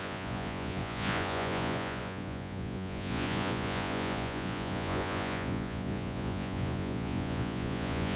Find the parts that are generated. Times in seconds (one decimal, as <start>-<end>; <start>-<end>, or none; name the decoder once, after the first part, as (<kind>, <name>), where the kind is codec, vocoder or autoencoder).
0.0-8.2 (vocoder, Vocos)